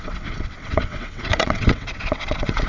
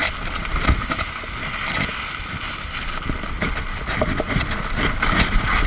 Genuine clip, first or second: second